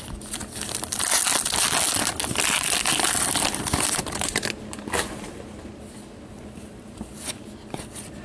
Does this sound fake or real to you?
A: real